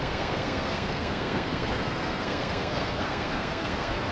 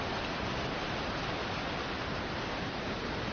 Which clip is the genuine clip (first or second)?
second